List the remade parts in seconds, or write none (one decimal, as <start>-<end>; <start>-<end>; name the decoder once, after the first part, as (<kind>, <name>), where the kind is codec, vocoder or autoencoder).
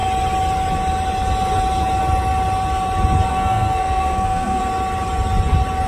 3.3-4.6 (codec, SNAC)